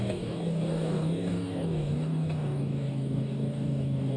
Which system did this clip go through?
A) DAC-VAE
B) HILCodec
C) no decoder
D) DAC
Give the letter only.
D